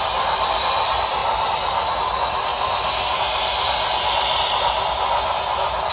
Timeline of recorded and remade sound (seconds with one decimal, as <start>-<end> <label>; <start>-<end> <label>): 0.0-1.2 recorded; 1.2-2.1 remade; 2.1-5.9 recorded